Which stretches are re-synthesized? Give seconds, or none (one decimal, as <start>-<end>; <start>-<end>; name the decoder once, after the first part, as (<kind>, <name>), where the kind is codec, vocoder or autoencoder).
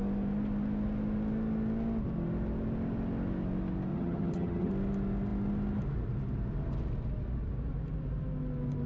3.9-4.7 (vocoder, HiFi-GAN)